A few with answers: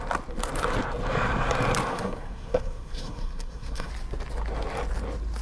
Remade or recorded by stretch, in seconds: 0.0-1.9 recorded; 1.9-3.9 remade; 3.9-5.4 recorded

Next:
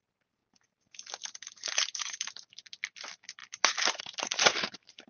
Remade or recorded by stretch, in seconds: 0.0-0.4 remade; 0.4-1.2 recorded; 1.2-5.1 remade